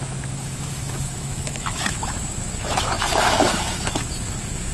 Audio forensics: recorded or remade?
remade